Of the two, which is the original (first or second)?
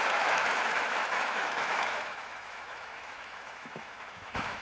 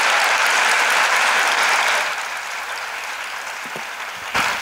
second